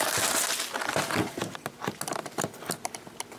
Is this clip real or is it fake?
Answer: real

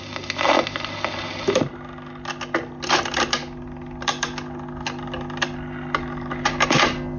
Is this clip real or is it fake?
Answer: real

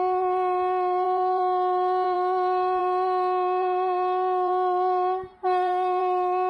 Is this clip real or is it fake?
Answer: fake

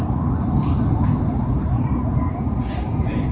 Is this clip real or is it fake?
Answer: fake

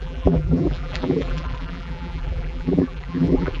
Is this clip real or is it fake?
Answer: fake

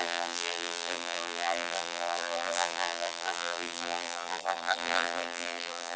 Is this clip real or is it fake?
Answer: fake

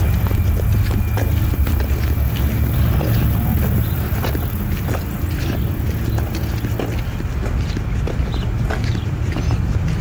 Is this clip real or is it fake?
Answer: real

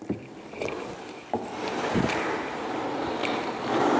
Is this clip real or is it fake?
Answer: real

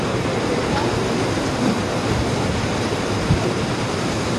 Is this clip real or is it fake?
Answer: fake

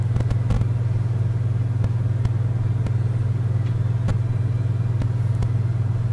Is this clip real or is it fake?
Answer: real